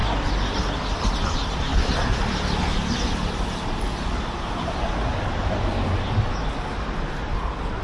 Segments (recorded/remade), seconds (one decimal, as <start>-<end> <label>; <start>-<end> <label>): 0.0-7.8 recorded